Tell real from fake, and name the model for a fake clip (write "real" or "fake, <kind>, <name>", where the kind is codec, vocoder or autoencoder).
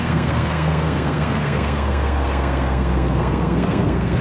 fake, codec, SNAC